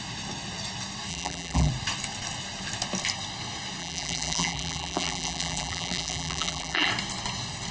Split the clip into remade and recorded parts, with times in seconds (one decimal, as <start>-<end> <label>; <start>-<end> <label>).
0.0-1.1 recorded; 1.1-1.7 remade; 1.7-3.8 recorded; 3.8-6.9 remade; 6.9-7.7 recorded